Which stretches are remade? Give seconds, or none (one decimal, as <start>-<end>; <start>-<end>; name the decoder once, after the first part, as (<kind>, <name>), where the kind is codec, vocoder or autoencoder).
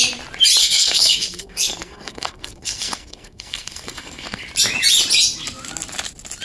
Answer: 0.6-4.4 (codec, SNAC)